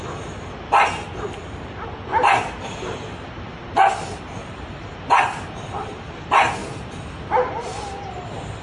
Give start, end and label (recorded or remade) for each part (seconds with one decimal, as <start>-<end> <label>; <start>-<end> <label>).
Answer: 0.0-2.1 recorded; 2.1-6.0 remade; 6.0-6.6 recorded; 6.6-8.6 remade